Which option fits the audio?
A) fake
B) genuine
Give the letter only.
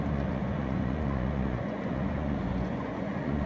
A